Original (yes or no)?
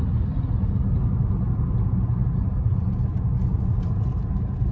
yes